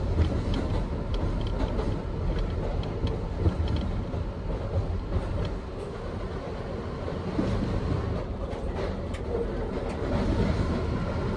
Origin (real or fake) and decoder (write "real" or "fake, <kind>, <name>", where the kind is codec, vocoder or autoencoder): real